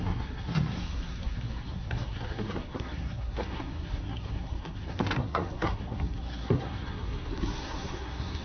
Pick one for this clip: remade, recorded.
remade